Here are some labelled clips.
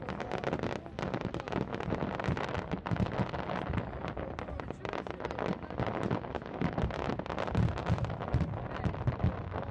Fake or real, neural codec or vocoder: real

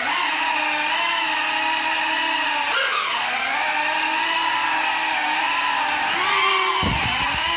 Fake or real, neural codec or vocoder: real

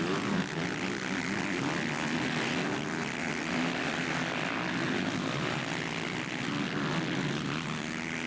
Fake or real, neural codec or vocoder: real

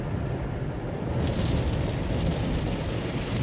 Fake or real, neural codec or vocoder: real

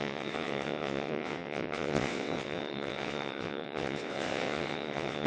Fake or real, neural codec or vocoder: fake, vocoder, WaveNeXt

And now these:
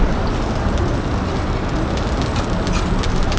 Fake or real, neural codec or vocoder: real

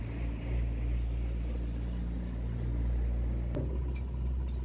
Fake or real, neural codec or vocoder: real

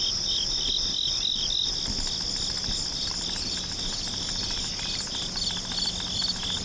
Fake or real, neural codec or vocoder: real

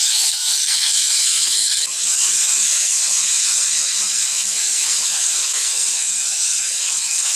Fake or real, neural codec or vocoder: fake, codec, SNAC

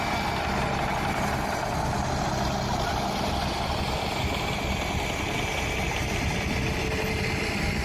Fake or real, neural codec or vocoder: real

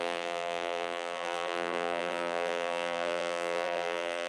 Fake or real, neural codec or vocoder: fake, vocoder, BigVGAN v2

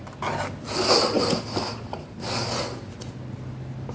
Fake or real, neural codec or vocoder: real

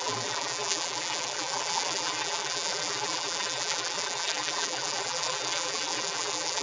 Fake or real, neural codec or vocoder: fake, vocoder, BigVGAN v2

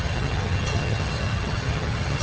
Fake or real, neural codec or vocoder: fake, vocoder, HiFi-GAN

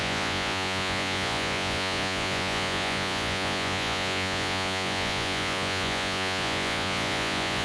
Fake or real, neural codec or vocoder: fake, vocoder, Vocos